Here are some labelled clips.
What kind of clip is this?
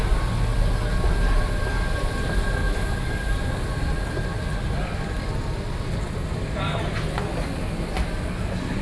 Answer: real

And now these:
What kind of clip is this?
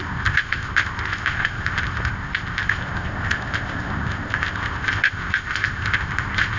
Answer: fake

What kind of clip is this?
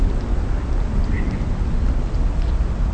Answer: fake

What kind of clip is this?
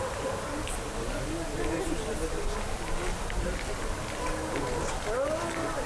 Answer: real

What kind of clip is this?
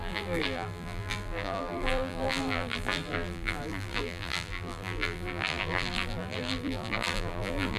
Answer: fake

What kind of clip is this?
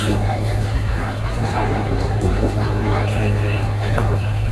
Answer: fake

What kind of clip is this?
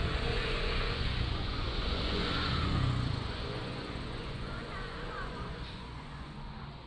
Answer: fake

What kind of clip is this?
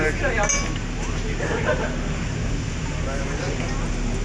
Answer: real